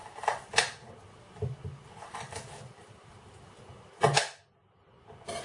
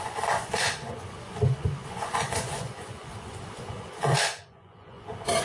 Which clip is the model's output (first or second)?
second